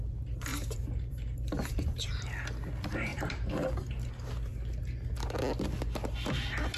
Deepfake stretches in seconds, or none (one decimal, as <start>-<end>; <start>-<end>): 0.5-2.1; 3.1-4.1